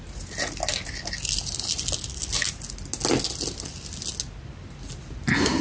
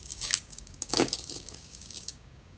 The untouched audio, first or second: first